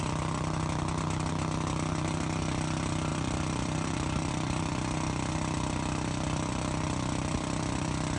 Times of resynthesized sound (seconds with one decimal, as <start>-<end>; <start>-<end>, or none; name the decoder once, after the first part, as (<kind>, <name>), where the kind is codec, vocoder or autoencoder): 3.1-4.3 (vocoder, BigVGAN v2)